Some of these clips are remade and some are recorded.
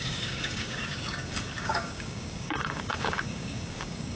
remade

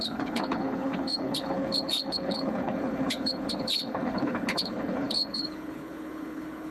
remade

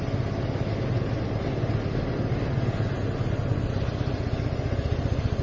recorded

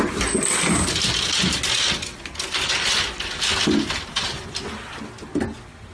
recorded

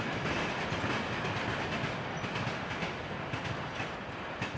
recorded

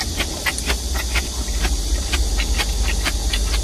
recorded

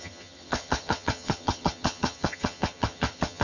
remade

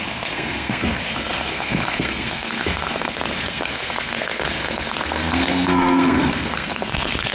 remade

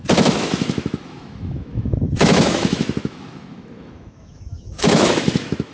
remade